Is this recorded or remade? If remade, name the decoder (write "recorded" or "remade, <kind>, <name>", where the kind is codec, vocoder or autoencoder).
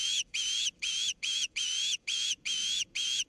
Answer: remade, vocoder, Vocos